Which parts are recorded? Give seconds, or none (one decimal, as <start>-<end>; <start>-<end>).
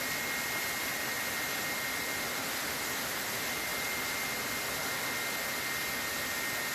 0.0-6.7